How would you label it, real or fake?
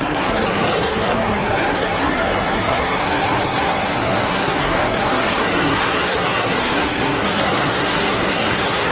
fake